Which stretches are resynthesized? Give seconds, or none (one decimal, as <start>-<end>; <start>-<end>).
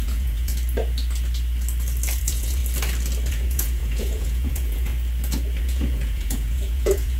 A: 0.0-0.5; 2.2-2.6; 3.3-4.9; 5.6-7.2